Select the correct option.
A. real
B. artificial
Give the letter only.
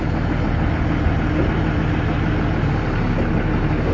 A